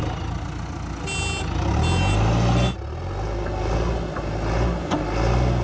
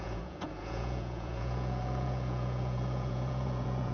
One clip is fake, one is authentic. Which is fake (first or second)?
second